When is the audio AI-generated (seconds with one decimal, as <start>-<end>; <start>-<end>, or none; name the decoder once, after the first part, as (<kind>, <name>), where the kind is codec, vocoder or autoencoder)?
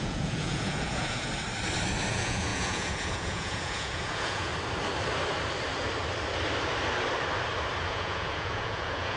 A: 0.0-1.3 (vocoder, Vocos); 2.1-4.5; 7.9-9.2